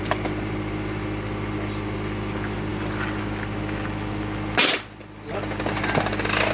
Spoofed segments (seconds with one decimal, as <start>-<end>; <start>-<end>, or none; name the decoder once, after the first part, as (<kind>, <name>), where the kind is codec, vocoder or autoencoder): none